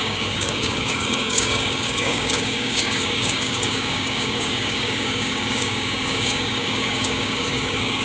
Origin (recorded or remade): remade